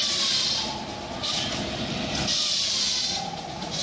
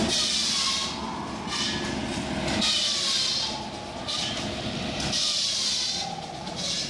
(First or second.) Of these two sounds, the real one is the second